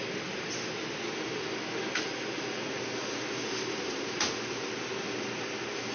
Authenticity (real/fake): real